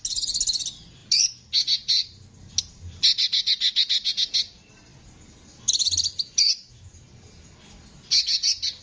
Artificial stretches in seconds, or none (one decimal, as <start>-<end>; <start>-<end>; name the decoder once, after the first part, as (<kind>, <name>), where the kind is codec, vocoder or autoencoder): none